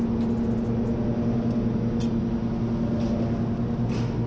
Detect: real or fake real